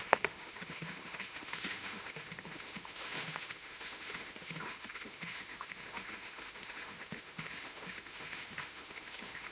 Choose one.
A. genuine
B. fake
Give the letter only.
B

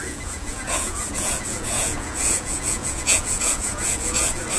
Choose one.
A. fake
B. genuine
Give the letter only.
A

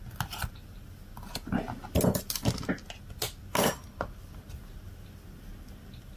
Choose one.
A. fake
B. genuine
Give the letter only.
B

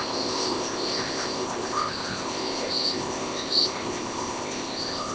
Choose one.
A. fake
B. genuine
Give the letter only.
A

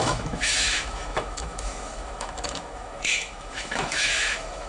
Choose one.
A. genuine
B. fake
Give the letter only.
B